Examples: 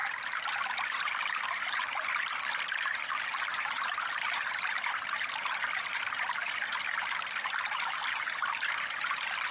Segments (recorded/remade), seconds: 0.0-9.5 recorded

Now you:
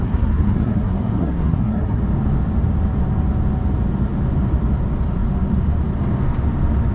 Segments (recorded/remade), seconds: 0.0-2.0 remade; 2.0-6.9 recorded

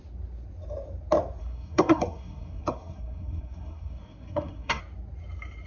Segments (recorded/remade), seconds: 0.0-1.4 recorded; 1.4-4.8 remade; 4.8-5.7 recorded